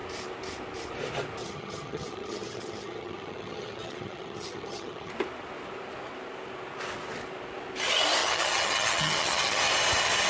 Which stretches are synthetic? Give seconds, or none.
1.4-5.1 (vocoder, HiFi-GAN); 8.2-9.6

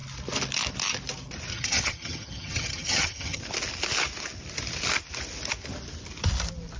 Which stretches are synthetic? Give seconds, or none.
1.5-3.4 (vocoder, HiFi-GAN)

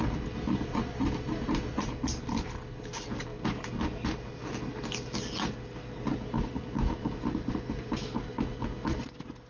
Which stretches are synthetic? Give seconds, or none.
none

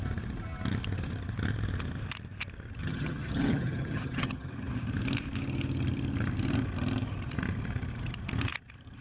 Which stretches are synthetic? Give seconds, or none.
2.8-4.5 (vocoder, HiFi-GAN)